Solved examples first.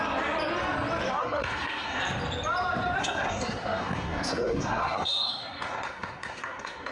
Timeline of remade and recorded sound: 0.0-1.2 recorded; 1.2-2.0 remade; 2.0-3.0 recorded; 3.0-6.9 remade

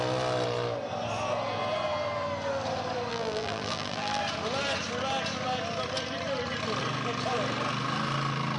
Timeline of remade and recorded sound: 0.0-3.1 recorded; 3.1-4.2 remade; 4.2-8.6 recorded

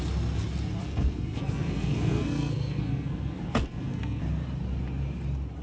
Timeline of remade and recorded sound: 0.0-0.8 recorded; 0.8-4.2 remade; 4.2-5.6 recorded

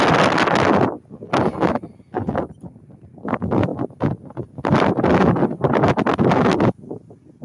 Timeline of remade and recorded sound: 0.0-7.4 recorded

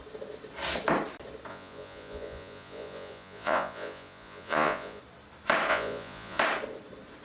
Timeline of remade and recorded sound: 0.0-1.5 recorded; 1.5-5.0 remade; 5.0-5.7 recorded; 5.7-6.4 remade; 6.4-7.2 recorded

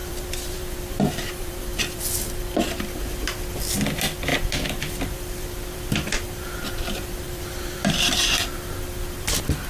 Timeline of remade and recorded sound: 0.0-2.0 remade; 2.0-4.3 recorded; 4.3-9.7 remade

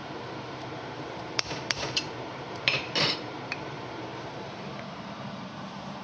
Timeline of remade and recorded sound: 0.0-6.0 remade